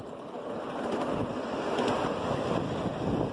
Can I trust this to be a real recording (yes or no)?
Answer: yes